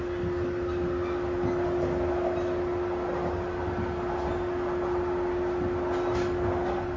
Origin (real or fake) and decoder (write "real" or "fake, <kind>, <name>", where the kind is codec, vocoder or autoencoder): real